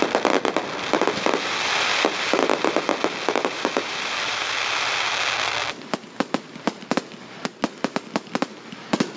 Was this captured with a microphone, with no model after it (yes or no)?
yes